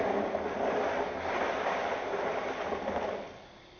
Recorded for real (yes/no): yes